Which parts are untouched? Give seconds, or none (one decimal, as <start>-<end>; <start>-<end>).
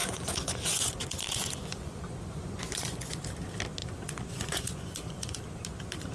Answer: 3.2-3.8; 5.4-6.1